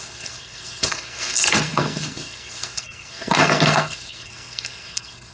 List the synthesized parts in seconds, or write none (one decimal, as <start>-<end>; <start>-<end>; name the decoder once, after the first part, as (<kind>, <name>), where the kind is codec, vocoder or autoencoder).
0.0-5.3 (codec, SNAC)